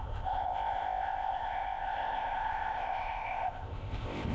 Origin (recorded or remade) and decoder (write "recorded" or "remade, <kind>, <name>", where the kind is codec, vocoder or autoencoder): remade, codec, ZipCodec